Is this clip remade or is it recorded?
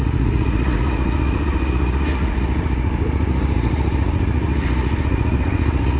remade